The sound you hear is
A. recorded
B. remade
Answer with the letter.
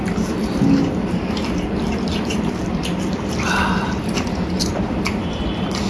B